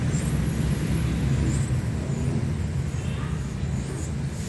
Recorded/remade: recorded